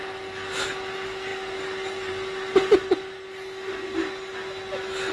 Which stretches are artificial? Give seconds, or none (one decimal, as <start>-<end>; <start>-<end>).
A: none